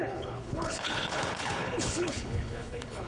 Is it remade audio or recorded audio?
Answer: remade